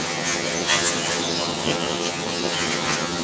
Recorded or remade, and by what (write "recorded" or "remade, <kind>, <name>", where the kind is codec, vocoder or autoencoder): remade, vocoder, HiFi-GAN